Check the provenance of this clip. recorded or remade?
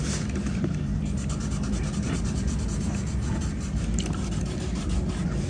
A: recorded